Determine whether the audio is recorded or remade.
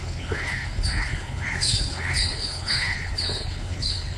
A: remade